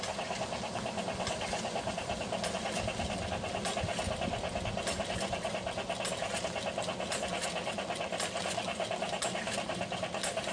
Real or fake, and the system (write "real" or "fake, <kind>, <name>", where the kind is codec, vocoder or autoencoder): real